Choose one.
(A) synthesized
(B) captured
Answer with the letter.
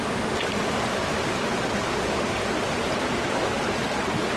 B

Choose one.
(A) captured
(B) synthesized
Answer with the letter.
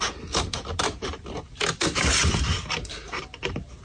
A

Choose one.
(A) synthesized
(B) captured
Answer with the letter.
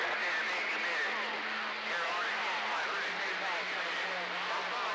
B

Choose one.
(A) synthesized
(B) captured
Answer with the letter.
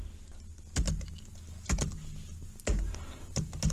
B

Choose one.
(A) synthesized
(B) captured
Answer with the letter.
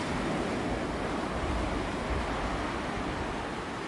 B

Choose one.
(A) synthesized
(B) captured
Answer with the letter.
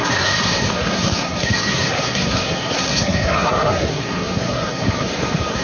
A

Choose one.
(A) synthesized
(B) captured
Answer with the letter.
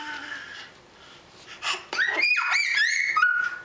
A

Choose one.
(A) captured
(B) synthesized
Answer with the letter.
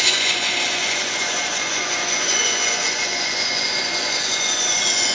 B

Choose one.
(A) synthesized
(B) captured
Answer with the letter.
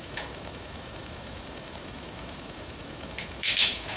A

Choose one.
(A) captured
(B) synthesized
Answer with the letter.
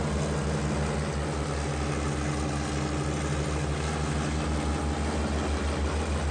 A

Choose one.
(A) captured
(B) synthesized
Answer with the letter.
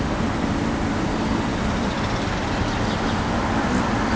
A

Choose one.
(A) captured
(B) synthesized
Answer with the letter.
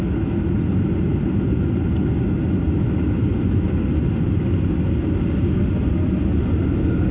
A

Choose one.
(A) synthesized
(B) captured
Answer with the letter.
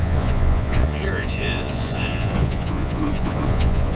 A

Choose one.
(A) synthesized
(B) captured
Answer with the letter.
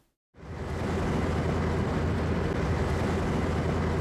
B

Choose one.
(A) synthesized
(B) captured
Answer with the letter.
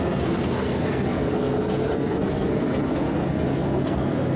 A